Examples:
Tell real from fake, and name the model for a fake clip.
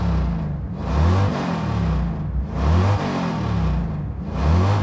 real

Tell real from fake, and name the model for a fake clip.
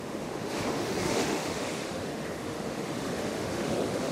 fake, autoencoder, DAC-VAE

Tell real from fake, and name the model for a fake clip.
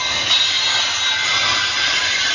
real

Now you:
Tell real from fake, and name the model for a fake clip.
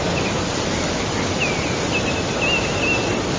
real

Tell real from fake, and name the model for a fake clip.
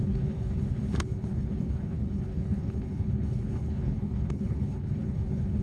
fake, codec, HILCodec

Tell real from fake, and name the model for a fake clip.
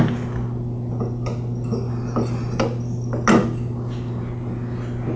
real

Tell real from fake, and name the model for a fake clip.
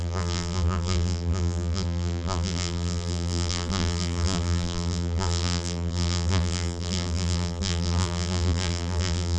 fake, vocoder, BigVGAN v2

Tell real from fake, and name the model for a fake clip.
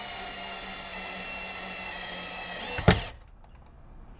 real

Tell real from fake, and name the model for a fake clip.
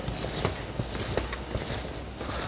real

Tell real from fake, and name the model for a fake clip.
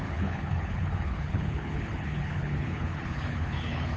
fake, codec, HILCodec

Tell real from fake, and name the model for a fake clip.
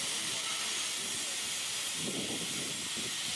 real